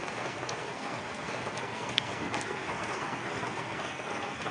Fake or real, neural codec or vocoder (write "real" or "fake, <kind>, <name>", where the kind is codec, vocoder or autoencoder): fake, codec, SNAC